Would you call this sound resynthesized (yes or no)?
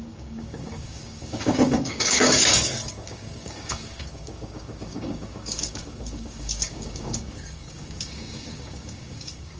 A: yes